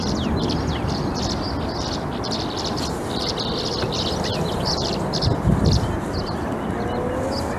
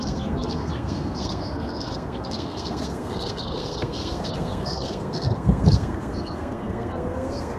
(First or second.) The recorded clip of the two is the first